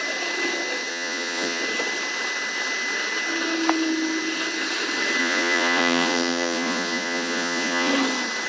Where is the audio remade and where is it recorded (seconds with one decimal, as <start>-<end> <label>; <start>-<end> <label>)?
0.0-0.9 recorded; 0.9-1.6 remade; 1.6-5.2 recorded; 5.2-7.9 remade; 7.9-8.5 recorded